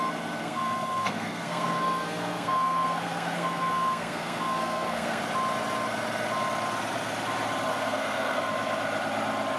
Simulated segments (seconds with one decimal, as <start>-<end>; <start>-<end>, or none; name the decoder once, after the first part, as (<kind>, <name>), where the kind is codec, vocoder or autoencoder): 0.4-5.2 (codec, SNAC); 7.7-8.5